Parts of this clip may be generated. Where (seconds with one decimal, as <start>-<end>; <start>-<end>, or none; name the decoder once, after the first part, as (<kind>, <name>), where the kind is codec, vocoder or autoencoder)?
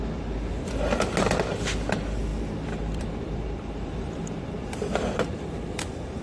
2.3-6.2 (vocoder, BigVGAN v2)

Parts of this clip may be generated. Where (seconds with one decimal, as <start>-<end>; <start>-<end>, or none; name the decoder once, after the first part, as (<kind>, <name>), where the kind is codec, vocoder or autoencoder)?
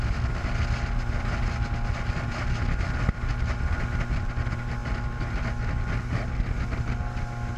none